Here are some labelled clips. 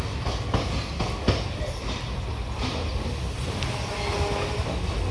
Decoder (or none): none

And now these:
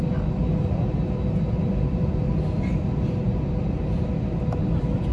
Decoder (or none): none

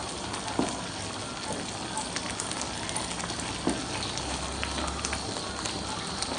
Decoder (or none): none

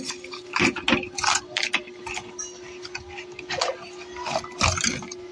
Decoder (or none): none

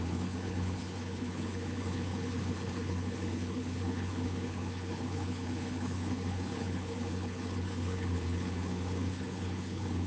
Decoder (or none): codec, HILCodec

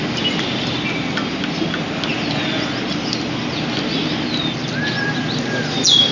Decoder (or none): none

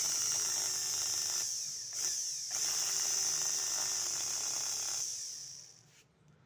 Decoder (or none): none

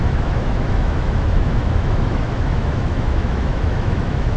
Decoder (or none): autoencoder, DAC-VAE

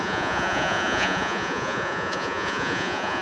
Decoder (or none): vocoder, Vocos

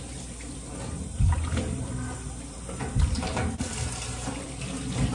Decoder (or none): vocoder, BigVGAN v2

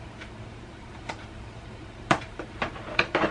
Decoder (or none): vocoder, BigVGAN v2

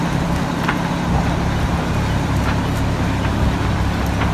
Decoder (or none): none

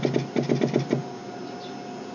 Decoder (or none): none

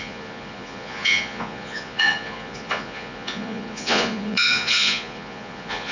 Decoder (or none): vocoder, Vocos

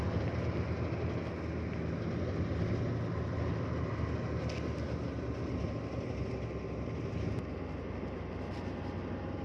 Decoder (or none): none